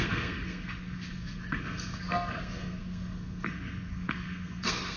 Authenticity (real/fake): fake